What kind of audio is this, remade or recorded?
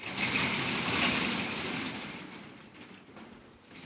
recorded